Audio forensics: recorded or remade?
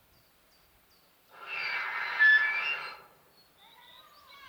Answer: recorded